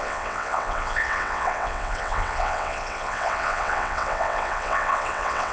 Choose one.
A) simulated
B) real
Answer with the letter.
A